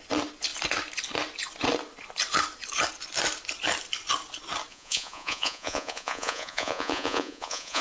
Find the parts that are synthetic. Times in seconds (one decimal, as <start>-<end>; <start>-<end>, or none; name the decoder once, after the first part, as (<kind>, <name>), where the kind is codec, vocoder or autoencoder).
4.7-7.8 (vocoder, Vocos)